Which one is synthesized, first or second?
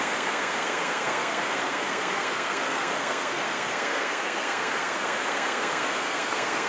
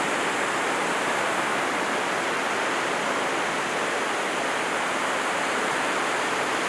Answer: first